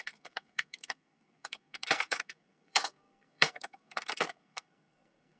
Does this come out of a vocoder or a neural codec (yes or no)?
yes